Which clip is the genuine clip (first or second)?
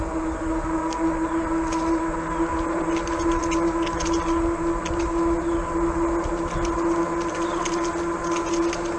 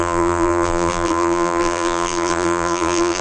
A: first